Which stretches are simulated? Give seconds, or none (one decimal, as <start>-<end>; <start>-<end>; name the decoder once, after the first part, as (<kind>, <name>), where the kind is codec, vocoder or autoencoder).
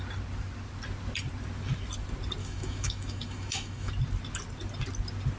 2.4-3.9 (autoencoder, DAC-VAE)